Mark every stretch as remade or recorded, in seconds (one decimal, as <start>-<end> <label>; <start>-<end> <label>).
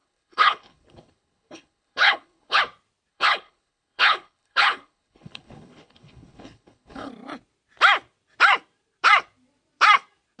0.0-2.6 remade; 2.6-3.1 recorded; 3.1-7.1 remade; 7.1-10.4 recorded